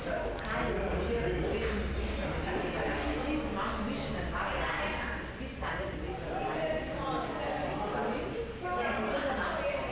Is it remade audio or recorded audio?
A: recorded